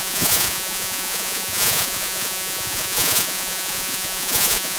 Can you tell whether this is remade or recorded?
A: remade